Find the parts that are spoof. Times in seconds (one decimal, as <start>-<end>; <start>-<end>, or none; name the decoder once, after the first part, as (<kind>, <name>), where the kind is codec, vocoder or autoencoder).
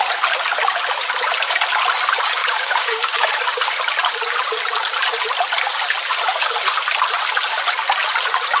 2.4-3.3 (codec, DAC)